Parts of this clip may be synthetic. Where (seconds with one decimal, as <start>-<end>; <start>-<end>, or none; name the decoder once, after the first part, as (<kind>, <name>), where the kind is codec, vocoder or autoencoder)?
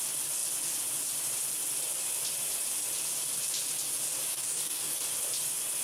4.3-5.0 (codec, DAC)